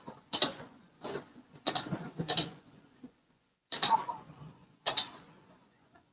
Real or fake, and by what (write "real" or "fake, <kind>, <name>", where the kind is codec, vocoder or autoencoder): fake, vocoder, Vocos